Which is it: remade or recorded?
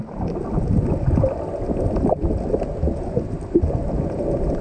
recorded